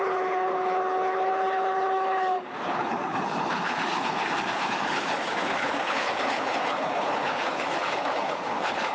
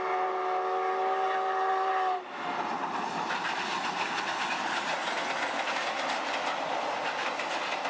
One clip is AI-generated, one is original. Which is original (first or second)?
second